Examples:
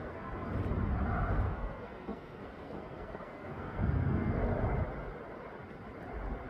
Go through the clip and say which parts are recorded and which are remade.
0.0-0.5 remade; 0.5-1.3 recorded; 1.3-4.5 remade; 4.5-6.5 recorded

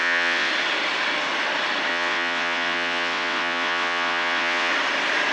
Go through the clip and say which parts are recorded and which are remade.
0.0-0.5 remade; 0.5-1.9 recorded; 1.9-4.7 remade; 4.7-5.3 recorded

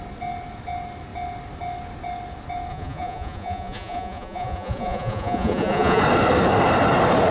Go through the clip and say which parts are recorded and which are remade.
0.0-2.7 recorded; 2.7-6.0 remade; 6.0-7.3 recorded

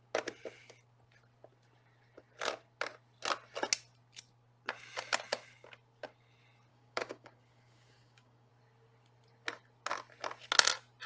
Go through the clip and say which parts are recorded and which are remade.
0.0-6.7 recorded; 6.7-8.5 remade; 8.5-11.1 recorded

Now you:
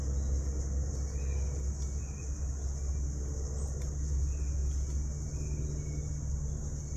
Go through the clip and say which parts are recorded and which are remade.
0.0-7.0 recorded

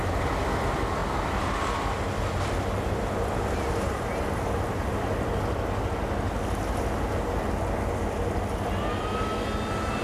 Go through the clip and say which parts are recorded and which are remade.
0.0-10.0 recorded